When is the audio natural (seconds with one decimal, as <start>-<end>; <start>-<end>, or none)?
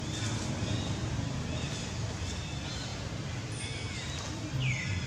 0.0-1.0; 1.7-2.9; 3.6-5.1